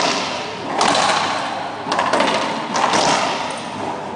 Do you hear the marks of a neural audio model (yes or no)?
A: no